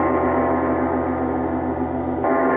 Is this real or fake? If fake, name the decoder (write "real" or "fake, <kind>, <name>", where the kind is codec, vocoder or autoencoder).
real